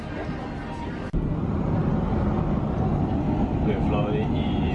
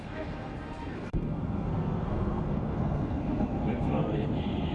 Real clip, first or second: first